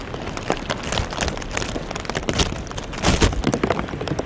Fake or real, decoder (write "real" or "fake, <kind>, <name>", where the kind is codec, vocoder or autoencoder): real